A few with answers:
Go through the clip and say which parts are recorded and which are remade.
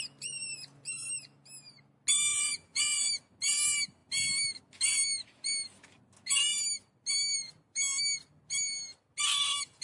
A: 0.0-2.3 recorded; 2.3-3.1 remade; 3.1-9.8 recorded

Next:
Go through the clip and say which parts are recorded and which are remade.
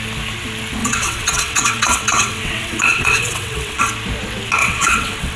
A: 0.0-0.8 recorded; 0.8-3.8 remade; 3.8-4.6 recorded; 4.6-5.4 remade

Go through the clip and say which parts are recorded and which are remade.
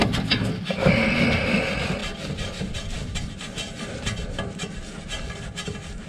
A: 0.0-6.1 recorded